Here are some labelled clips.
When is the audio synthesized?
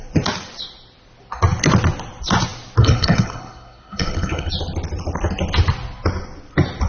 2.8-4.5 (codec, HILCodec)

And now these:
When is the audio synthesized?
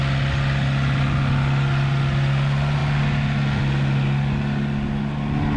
none